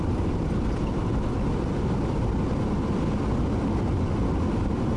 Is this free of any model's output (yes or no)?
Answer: yes